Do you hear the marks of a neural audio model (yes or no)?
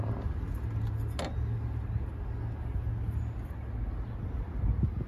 no